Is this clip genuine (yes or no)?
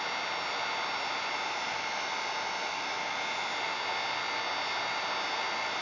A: yes